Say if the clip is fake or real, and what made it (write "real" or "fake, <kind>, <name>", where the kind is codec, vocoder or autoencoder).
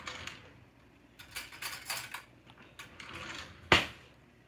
real